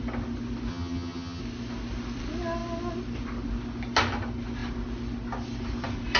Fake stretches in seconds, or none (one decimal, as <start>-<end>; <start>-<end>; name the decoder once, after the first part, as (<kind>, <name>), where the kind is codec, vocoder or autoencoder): 0.7-1.4 (vocoder, HiFi-GAN)